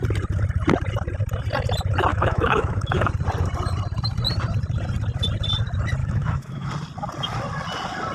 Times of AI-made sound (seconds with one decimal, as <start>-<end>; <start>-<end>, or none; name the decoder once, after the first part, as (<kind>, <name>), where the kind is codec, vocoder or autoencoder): 2.1-3.1 (autoencoder, DAC-VAE); 6.0-6.7